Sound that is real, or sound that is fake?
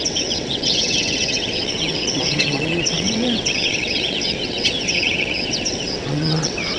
fake